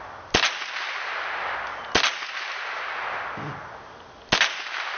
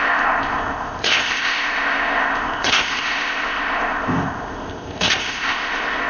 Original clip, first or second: first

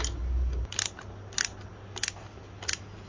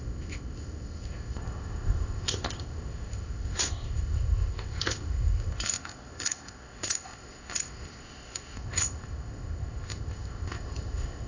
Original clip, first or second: first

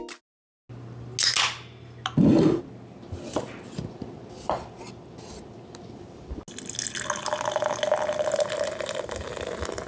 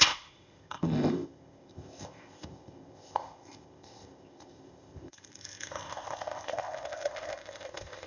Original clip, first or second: first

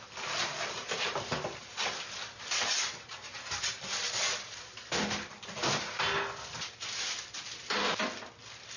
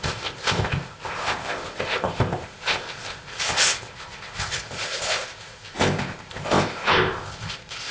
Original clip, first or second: first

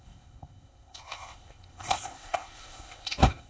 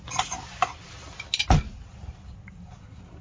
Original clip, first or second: second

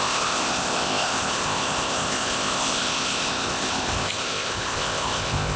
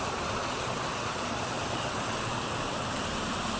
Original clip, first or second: second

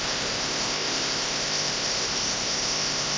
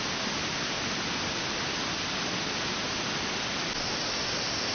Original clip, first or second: second